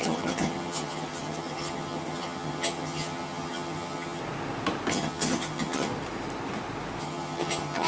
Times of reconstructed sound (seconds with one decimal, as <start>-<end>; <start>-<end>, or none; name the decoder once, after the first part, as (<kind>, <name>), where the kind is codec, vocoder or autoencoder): 0.0-4.2 (vocoder, HiFi-GAN); 4.9-5.9; 7.0-7.9